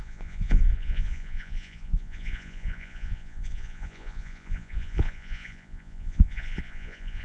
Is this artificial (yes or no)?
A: yes